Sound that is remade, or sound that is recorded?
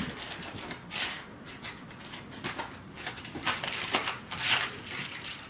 recorded